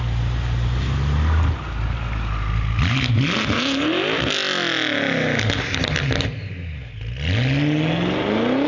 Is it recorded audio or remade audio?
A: recorded